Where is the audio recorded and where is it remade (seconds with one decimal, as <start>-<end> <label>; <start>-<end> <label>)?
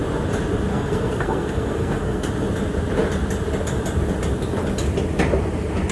0.0-0.7 recorded; 0.7-2.3 remade; 2.3-5.9 recorded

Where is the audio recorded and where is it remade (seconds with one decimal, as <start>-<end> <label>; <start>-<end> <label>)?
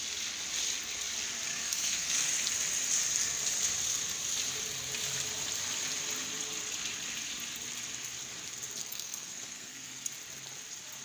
0.0-1.5 recorded; 1.5-2.3 remade; 2.3-8.8 recorded; 8.8-10.1 remade; 10.1-11.0 recorded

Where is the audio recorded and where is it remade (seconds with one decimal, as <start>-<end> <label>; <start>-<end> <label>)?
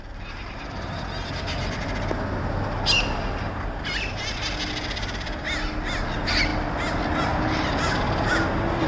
0.0-8.9 recorded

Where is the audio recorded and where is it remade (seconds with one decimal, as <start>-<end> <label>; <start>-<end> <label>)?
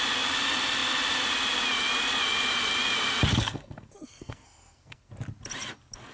0.0-3.3 recorded; 3.3-5.1 remade; 5.1-6.1 recorded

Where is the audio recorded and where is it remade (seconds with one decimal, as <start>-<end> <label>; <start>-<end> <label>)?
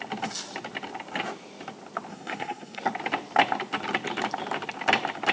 0.0-2.1 recorded; 2.1-2.8 remade; 2.8-5.3 recorded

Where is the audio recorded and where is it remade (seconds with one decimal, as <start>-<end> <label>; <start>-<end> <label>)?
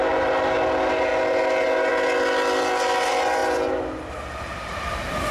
0.0-5.3 recorded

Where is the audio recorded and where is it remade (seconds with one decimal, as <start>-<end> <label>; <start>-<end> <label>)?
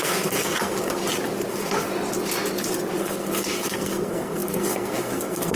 0.0-1.0 remade; 1.0-1.5 recorded; 1.5-1.9 remade; 1.9-3.0 recorded; 3.0-5.6 remade